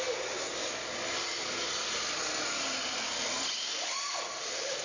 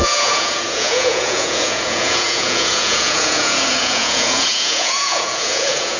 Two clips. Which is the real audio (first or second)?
first